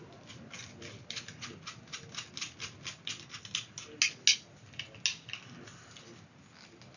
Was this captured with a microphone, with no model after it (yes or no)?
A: yes